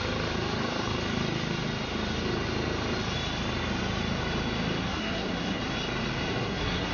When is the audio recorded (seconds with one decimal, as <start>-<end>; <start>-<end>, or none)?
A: 0.0-4.8; 5.6-6.3